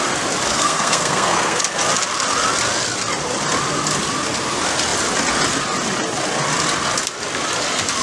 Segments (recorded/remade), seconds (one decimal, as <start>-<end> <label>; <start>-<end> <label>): 0.0-0.5 recorded; 0.5-1.6 remade; 1.6-8.0 recorded